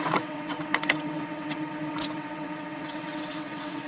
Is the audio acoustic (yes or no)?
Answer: no